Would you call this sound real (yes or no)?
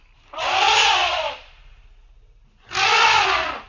yes